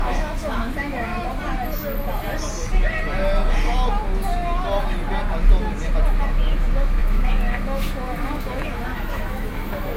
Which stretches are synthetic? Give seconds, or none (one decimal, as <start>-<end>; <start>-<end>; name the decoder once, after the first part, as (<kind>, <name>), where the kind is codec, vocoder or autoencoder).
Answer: 0.0-1.1 (autoencoder, DAC-VAE); 6.2-10.0